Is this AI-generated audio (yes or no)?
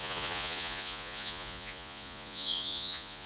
yes